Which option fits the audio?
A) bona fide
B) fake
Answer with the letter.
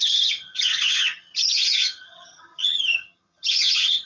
B